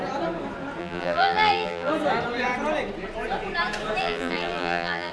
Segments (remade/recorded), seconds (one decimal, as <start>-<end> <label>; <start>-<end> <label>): 0.0-0.8 recorded; 0.8-1.9 remade; 1.9-4.0 recorded; 4.0-5.1 remade